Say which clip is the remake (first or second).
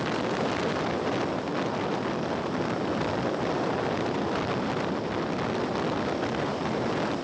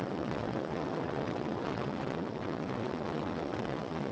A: second